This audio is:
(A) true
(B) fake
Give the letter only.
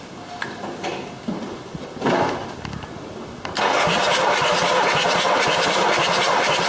A